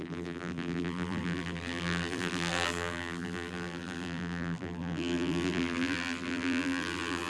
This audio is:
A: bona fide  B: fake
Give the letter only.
B